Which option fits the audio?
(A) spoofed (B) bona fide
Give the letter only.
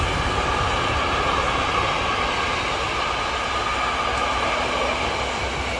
B